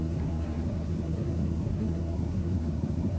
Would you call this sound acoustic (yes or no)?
no